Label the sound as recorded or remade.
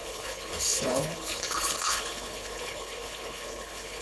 remade